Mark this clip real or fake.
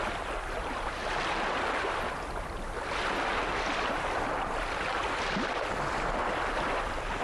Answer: real